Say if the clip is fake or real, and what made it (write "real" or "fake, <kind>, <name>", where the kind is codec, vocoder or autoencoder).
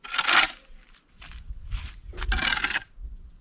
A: real